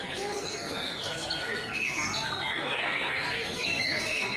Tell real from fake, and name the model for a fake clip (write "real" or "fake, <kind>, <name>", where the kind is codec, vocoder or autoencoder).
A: fake, codec, SNAC